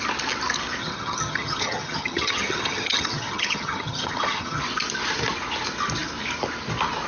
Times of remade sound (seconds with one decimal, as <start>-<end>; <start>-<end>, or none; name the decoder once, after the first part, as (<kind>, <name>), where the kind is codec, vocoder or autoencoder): 0.8-4.6 (vocoder, HiFi-GAN)